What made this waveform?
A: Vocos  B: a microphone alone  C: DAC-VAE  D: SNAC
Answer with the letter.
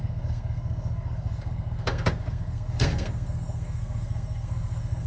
D